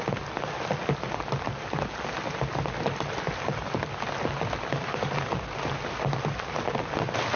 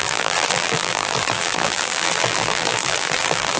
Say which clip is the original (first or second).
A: first